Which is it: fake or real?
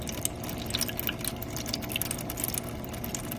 real